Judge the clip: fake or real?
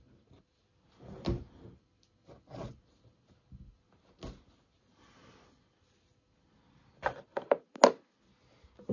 real